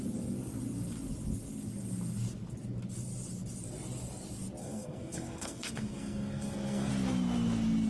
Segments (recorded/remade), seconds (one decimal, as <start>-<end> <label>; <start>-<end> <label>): 0.0-4.6 recorded; 4.6-6.9 remade; 6.9-7.9 recorded